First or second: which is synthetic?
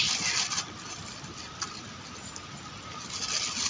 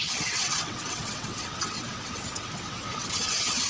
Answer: second